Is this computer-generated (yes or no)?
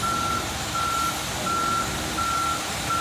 no